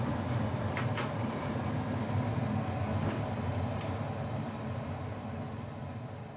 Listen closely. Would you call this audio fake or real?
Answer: real